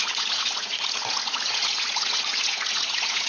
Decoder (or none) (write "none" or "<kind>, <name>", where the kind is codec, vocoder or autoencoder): vocoder, Vocos